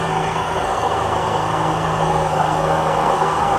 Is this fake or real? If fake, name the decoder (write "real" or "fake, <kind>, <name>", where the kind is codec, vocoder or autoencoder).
fake, codec, SNAC